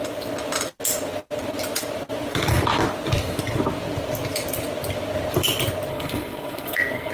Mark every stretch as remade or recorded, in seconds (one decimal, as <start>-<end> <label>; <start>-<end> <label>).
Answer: 0.0-5.9 recorded; 5.9-7.1 remade